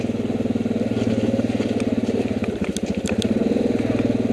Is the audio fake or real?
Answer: real